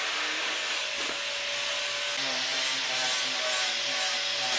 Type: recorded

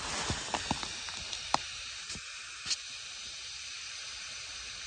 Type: recorded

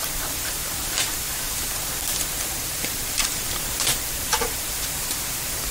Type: remade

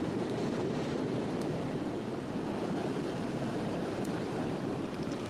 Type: remade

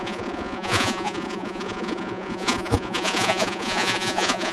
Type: remade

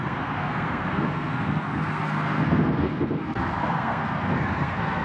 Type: remade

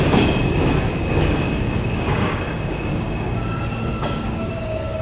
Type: remade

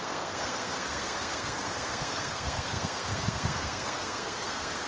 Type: remade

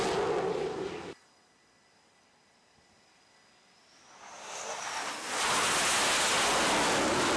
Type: recorded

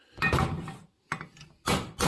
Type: recorded